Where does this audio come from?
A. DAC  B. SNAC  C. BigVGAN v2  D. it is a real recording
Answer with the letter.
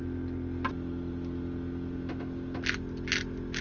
D